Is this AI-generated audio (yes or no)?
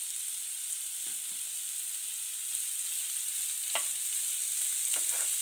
no